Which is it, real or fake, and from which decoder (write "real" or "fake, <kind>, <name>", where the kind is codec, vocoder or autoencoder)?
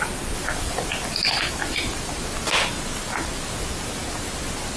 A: real